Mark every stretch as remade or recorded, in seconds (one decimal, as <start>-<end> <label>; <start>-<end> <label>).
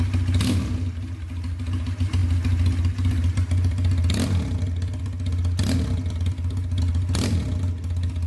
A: 0.0-8.3 recorded